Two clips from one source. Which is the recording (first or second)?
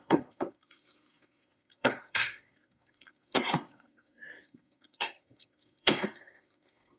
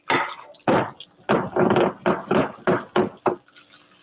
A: second